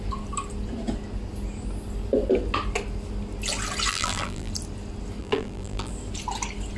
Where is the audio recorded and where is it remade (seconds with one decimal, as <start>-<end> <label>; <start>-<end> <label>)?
0.0-3.9 recorded; 3.9-4.5 remade; 4.5-5.2 recorded; 5.2-5.9 remade; 5.9-6.8 recorded

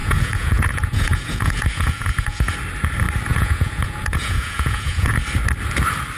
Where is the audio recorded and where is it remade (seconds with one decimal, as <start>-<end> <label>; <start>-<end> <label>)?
0.0-2.5 remade; 2.5-3.3 recorded; 3.3-5.2 remade; 5.2-6.2 recorded

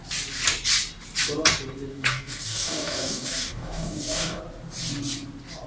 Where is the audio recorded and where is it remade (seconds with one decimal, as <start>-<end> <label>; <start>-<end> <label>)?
0.0-1.9 recorded; 1.9-4.4 remade; 4.4-5.7 recorded